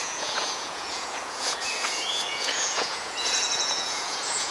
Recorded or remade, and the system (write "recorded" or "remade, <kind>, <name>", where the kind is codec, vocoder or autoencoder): remade, vocoder, Vocos